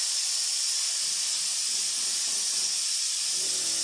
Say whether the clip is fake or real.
real